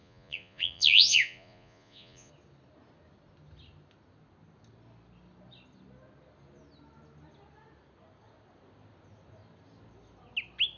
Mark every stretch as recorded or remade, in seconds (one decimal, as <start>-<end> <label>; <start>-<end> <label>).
0.0-2.3 remade; 2.3-10.8 recorded